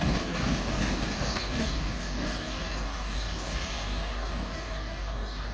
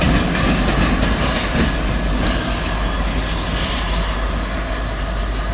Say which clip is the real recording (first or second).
second